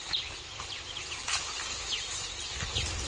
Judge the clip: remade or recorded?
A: recorded